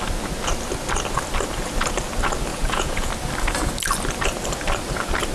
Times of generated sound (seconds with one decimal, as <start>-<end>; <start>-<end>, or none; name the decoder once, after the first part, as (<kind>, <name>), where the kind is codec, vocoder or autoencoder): 2.5-3.1 (vocoder, Vocos)